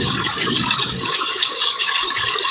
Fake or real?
fake